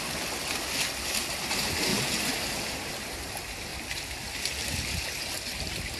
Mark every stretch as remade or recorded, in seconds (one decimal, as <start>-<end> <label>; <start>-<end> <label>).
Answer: 0.0-1.9 recorded; 1.9-2.9 remade; 2.9-3.7 recorded; 3.7-4.5 remade; 4.5-6.0 recorded